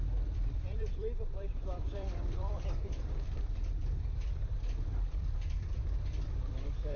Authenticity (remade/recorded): remade